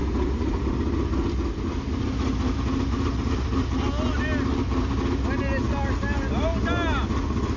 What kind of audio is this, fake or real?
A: real